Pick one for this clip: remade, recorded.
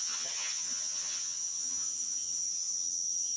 remade